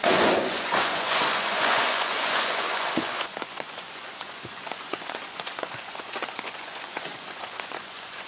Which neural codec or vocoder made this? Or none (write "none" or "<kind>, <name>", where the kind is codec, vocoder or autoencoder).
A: vocoder, Vocos